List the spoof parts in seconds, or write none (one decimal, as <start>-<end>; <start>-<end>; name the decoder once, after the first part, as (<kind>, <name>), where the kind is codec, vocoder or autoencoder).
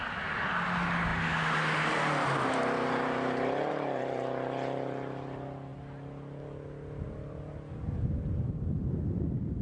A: none